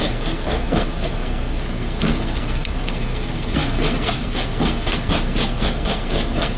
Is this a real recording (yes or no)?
no